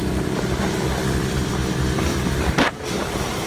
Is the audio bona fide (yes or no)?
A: no